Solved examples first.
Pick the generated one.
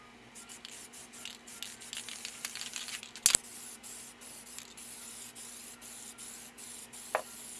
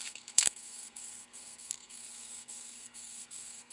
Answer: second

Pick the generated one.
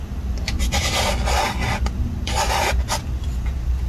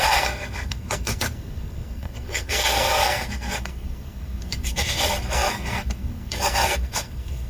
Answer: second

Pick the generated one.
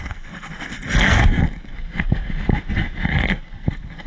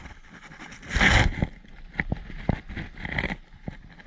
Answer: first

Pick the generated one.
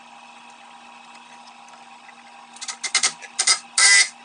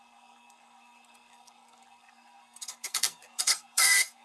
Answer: second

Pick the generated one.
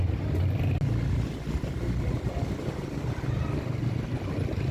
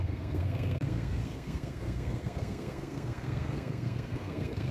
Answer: second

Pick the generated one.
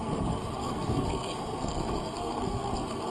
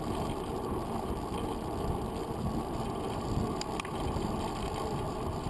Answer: first